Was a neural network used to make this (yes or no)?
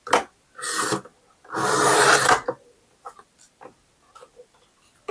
no